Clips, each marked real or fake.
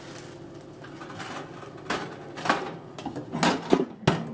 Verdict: real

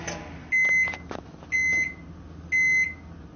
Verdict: real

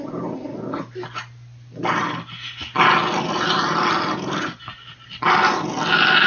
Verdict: real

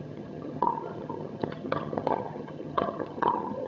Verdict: fake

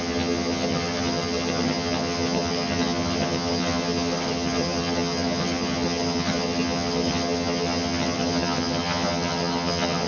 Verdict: fake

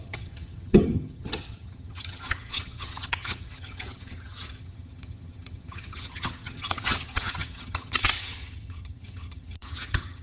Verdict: fake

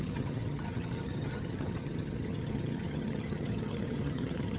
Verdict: fake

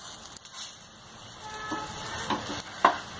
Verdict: real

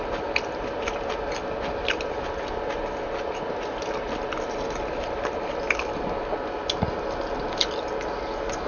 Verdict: real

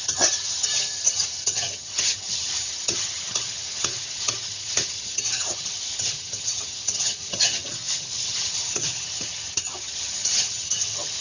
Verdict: fake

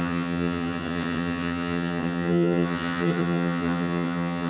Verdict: fake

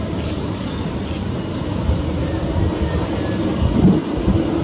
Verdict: real